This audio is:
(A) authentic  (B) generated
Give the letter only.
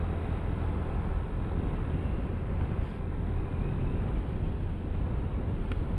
A